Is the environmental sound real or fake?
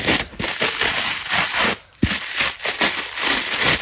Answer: real